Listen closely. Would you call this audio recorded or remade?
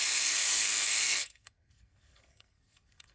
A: remade